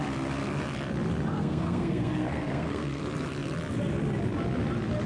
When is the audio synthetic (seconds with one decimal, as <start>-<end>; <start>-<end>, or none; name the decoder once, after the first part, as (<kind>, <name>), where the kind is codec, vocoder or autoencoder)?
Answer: 1.3-3.0 (codec, SNAC)